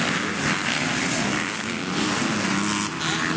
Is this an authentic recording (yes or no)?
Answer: yes